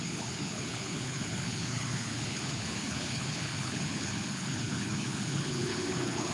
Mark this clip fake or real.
fake